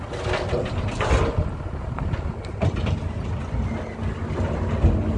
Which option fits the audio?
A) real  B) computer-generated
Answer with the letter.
A